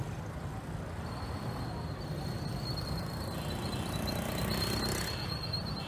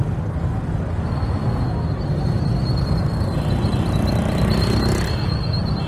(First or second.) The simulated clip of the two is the first